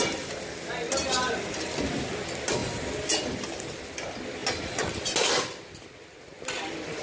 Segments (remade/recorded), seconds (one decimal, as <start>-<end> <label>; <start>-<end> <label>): 0.0-7.0 recorded